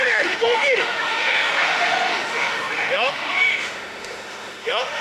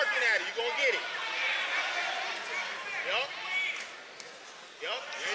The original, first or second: second